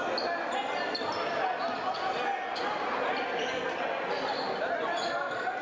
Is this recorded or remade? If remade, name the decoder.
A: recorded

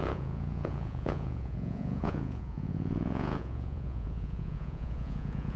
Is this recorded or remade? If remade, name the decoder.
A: remade, vocoder, Vocos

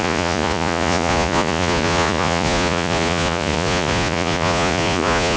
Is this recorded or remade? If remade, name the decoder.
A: remade, vocoder, Vocos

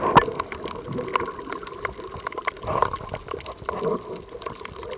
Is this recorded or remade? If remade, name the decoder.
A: recorded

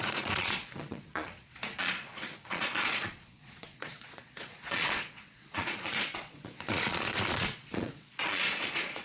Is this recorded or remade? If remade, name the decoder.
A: remade, vocoder, Vocos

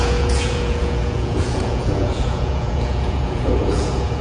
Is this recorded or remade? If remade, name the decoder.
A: remade, vocoder, Vocos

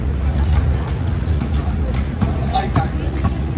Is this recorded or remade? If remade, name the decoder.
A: remade, vocoder, Vocos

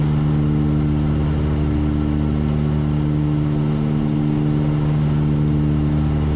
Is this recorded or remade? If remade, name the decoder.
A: recorded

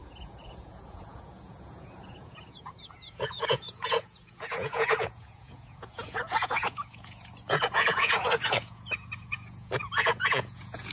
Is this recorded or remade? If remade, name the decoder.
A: remade, vocoder, Vocos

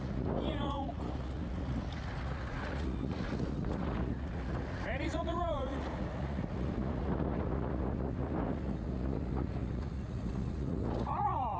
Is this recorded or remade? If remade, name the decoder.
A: remade, vocoder, Vocos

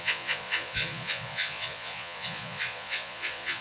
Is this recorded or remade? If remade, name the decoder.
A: remade, vocoder, Vocos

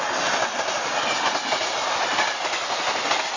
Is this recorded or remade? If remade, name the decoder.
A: recorded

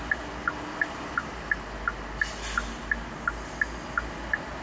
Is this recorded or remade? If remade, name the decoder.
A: recorded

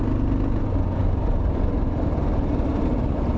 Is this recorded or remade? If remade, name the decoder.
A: recorded